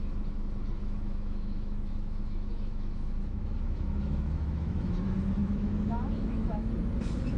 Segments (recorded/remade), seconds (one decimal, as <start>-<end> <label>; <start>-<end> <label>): 0.0-0.8 recorded; 0.8-5.0 remade; 5.0-5.4 recorded; 5.4-6.7 remade; 6.7-7.4 recorded